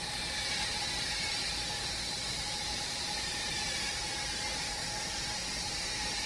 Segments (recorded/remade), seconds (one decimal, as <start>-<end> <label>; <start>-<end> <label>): 0.0-4.8 remade; 4.8-5.7 recorded; 5.7-6.3 remade